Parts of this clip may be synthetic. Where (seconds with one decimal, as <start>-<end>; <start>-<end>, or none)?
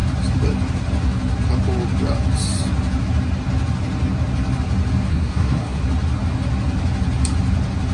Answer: 5.1-5.8